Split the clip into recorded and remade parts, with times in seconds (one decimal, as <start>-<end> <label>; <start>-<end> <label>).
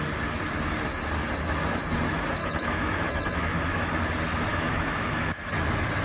0.0-2.4 recorded; 2.4-4.0 remade; 4.0-4.5 recorded; 4.5-5.5 remade; 5.5-6.0 recorded